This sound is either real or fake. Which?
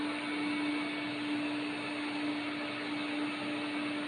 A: real